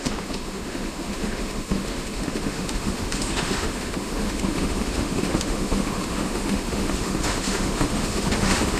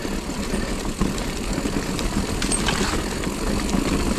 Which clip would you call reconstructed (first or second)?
first